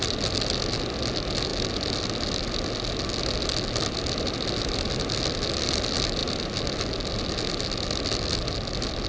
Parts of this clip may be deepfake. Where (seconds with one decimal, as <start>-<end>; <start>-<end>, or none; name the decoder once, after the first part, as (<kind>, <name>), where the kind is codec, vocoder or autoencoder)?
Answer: none